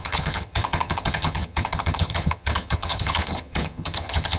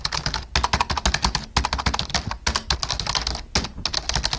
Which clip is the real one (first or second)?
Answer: second